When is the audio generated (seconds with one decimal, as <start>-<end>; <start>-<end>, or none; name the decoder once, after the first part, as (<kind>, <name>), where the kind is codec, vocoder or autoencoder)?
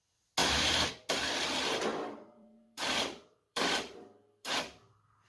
0.4-0.9 (vocoder, BigVGAN v2); 1.9-4.6